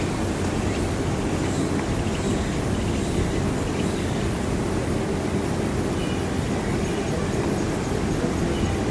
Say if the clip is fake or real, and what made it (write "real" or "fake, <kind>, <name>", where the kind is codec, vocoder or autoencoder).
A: real